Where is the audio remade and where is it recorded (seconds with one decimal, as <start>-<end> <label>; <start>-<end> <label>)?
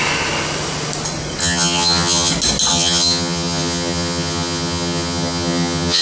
0.0-1.4 recorded; 1.4-2.3 remade; 2.3-2.7 recorded; 2.7-6.0 remade